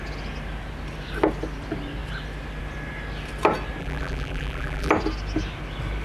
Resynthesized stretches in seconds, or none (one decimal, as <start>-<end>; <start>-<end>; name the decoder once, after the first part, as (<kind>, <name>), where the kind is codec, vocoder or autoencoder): 3.8-4.9 (vocoder, BigVGAN v2)